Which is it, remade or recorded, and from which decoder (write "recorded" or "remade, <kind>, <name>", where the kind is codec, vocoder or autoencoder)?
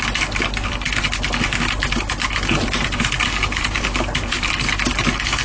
recorded